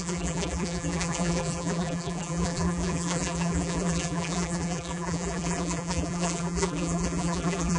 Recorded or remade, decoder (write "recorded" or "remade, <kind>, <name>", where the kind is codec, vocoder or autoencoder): remade, vocoder, BigVGAN v2